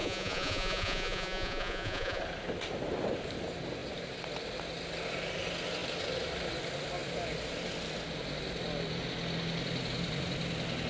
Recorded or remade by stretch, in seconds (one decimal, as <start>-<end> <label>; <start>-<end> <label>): 0.0-2.2 remade; 2.2-10.9 recorded